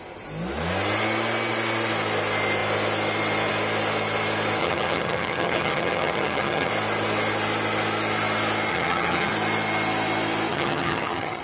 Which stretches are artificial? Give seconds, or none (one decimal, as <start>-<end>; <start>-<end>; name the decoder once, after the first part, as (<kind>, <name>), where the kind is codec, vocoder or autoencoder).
4.6-6.7 (vocoder, HiFi-GAN); 8.7-9.3; 10.5-11.4